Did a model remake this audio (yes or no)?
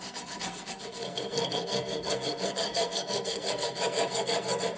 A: yes